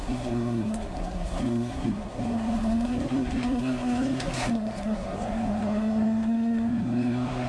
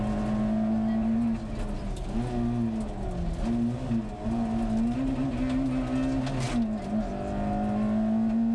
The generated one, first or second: first